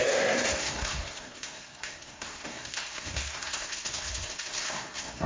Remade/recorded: remade